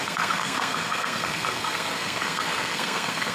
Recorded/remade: remade